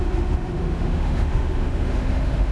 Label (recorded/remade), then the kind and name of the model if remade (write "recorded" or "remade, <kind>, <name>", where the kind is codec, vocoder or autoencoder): remade, autoencoder, DAC-VAE